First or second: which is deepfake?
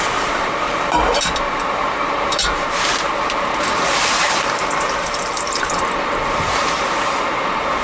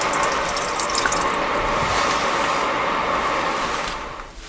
first